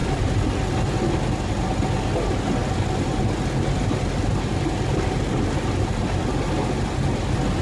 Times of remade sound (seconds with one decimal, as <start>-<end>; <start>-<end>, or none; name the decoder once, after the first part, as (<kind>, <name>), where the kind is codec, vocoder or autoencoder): none